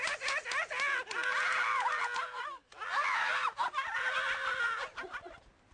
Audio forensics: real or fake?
real